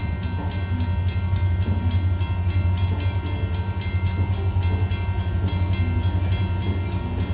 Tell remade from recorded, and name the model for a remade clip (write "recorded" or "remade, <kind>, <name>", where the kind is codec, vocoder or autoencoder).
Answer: recorded